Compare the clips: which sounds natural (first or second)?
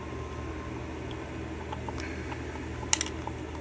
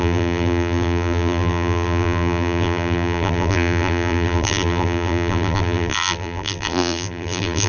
first